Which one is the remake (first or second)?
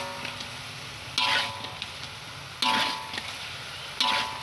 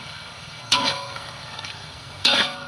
second